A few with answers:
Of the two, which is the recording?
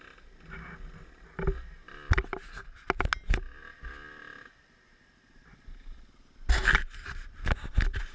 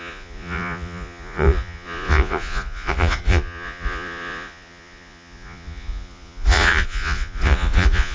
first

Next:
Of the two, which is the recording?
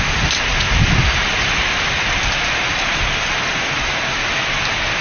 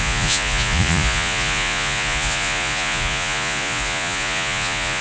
first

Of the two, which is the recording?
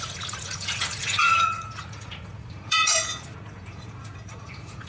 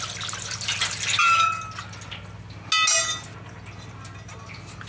second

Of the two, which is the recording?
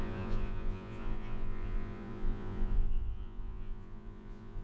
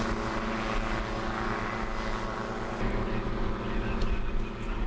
second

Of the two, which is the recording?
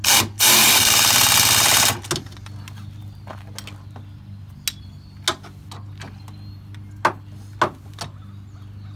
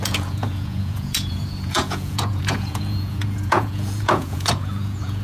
first